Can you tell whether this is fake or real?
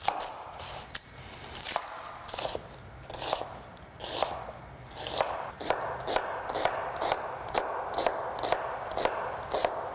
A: real